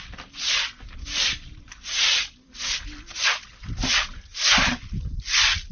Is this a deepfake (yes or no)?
no